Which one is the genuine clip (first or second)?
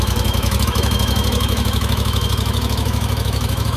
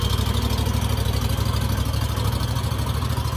second